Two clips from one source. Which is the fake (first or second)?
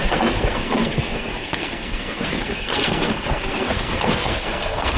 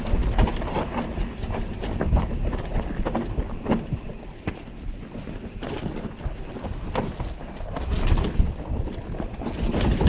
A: first